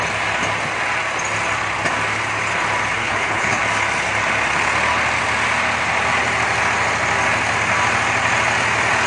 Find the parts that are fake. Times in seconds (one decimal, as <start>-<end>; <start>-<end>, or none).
3.0-3.6